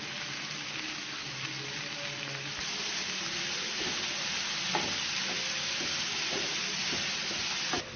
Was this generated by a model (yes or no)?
no